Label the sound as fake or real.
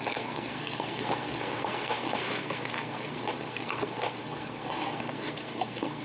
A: fake